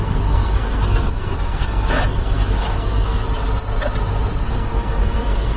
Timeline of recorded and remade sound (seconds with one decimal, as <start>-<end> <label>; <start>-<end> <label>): 0.0-3.2 remade; 3.2-4.4 recorded; 4.4-5.6 remade